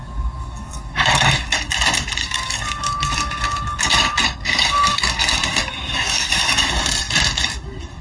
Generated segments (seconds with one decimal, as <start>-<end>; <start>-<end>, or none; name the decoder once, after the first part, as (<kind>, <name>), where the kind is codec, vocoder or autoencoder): 0.0-1.7 (codec, DAC); 2.2-6.7

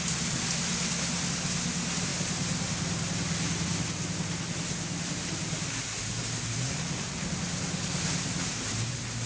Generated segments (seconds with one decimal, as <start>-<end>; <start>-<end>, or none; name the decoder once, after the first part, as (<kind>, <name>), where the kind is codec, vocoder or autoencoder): none